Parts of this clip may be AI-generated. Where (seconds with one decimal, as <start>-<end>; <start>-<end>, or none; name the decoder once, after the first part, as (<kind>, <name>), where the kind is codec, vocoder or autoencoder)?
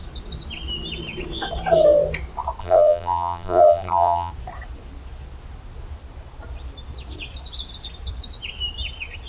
2.6-4.3 (vocoder, BigVGAN v2)